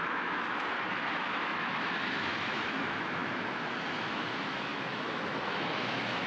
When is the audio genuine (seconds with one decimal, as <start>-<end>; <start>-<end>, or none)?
none